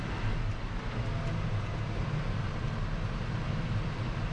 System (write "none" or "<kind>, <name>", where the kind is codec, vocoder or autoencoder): none